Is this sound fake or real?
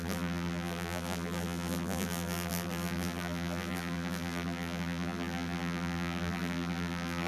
fake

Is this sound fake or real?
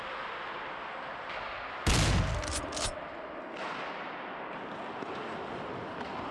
real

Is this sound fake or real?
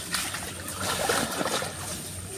fake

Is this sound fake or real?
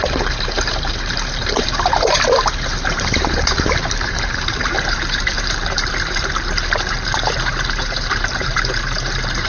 fake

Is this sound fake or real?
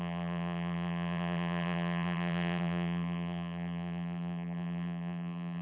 fake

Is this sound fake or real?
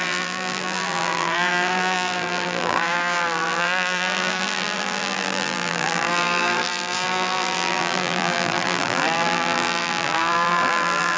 fake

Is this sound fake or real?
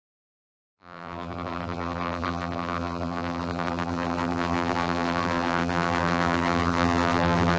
fake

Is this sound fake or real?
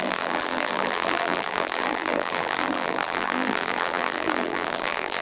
fake